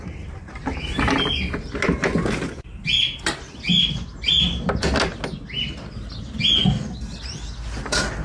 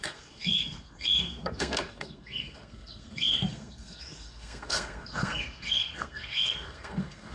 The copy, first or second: second